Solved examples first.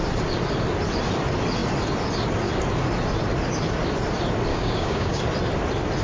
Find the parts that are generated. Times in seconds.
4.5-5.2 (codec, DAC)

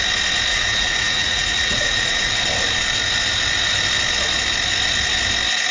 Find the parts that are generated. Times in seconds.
0.5-2.4 (vocoder, Vocos)

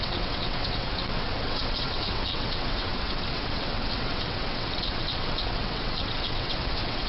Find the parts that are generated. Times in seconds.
0.0-7.1 (vocoder, WaveNeXt)

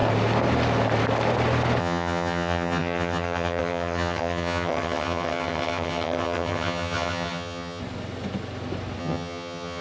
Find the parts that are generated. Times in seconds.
1.8-7.8 (vocoder, HiFi-GAN); 9.0-9.8

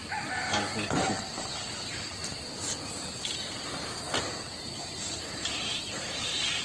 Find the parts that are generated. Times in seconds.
1.1-2.2 (vocoder, BigVGAN v2); 4.6-6.6